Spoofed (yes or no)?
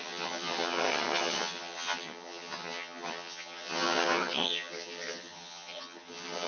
yes